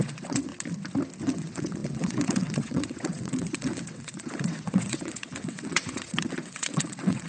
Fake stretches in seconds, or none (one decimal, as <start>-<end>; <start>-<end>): 0.0-0.5; 1.2-7.3